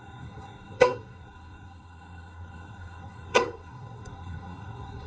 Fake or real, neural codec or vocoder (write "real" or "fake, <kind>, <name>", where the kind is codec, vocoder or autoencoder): fake, codec, SNAC